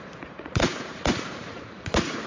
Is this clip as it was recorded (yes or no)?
no